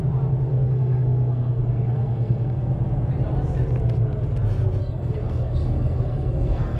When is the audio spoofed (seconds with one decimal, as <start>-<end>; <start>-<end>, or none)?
0.5-2.7; 4.8-6.8